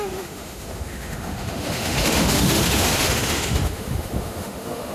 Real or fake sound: fake